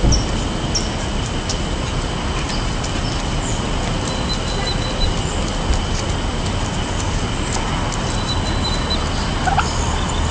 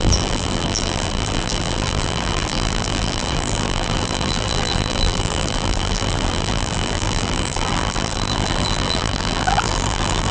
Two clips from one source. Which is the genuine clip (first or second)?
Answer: first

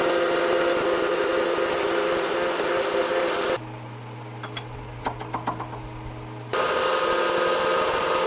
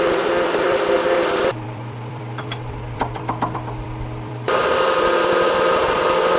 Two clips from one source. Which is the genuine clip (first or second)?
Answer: first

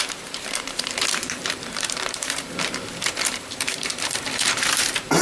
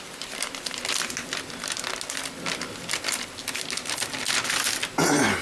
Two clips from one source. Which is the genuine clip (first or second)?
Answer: second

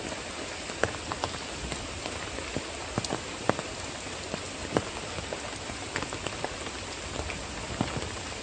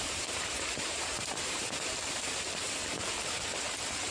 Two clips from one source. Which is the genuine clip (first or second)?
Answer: first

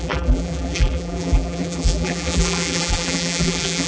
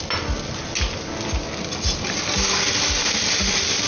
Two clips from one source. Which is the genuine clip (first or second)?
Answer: second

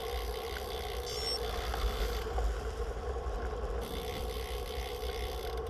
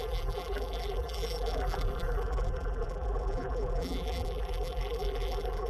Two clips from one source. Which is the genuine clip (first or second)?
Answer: first